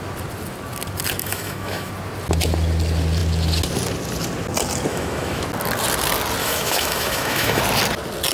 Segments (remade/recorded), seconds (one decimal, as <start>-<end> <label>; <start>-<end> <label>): 0.0-1.2 recorded; 1.2-1.9 remade; 1.9-4.9 recorded; 4.9-5.4 remade; 5.4-6.4 recorded; 6.4-7.6 remade; 7.6-8.3 recorded